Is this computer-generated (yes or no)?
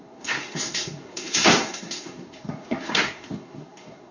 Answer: yes